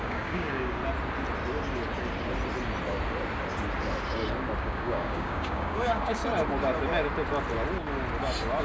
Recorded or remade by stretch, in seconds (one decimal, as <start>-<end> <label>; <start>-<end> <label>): 0.0-0.8 remade; 0.8-4.6 recorded; 4.6-6.2 remade; 6.2-8.6 recorded